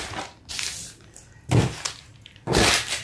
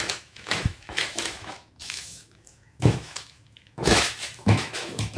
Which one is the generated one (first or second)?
second